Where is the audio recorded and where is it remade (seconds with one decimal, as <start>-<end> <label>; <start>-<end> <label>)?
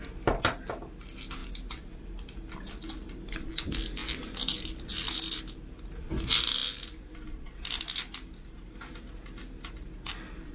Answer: 0.0-4.0 recorded; 4.0-5.1 remade; 5.1-10.5 recorded